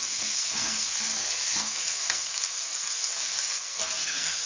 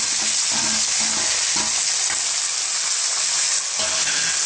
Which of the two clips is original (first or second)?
second